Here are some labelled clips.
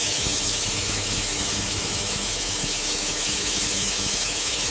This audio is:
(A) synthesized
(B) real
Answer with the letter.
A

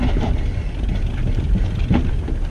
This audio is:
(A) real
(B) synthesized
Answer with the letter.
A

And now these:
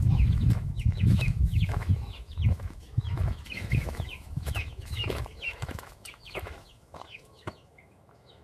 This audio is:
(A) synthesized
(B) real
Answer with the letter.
A